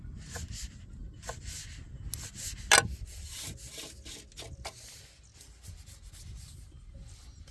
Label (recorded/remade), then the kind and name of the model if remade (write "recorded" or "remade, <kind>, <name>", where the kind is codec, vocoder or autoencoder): recorded